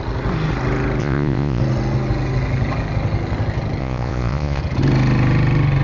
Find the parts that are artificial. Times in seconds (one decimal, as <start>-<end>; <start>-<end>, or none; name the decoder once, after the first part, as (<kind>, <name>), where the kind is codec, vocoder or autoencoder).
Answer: 1.0-1.6 (vocoder, Vocos); 3.8-4.6